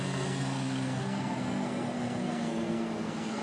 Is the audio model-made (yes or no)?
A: yes